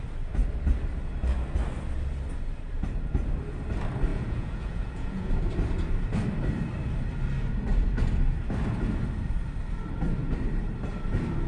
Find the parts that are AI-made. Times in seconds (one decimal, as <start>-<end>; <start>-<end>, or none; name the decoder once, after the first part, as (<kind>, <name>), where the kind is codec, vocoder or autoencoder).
4.1-5.3 (vocoder, Vocos)